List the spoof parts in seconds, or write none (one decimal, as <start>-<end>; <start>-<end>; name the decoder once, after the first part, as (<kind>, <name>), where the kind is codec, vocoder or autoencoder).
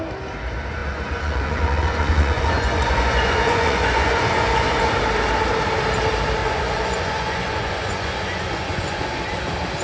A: 0.8-4.9 (vocoder, Vocos); 6.4-9.4